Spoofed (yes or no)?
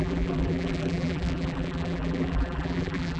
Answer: yes